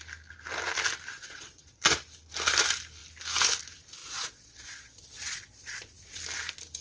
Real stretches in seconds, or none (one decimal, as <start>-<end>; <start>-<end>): 0.0-1.1; 2.0-4.0; 6.2-6.8